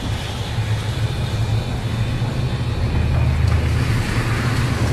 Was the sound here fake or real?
real